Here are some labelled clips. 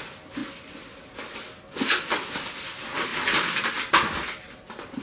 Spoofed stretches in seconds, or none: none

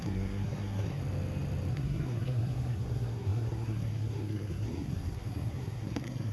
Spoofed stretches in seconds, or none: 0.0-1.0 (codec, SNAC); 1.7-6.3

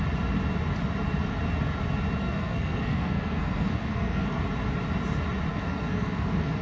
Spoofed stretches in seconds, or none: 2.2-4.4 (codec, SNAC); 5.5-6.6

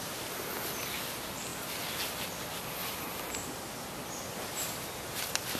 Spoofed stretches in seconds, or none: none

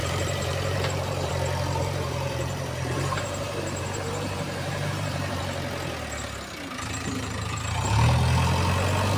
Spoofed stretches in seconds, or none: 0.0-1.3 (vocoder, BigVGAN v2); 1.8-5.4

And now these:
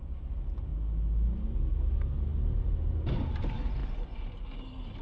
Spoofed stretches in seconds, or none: none

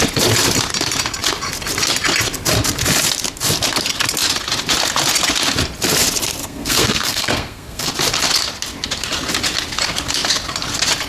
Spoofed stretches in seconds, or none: 6.4-7.9 (codec, SNAC)